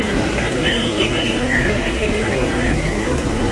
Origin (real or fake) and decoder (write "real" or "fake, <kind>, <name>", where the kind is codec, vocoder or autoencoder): fake, codec, SNAC